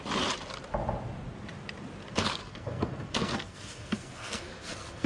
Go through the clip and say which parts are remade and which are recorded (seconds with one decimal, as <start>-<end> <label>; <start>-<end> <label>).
0.0-2.0 recorded; 2.0-5.1 remade